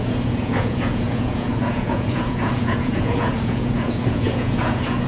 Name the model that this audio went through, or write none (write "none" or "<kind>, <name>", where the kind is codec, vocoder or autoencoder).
vocoder, Vocos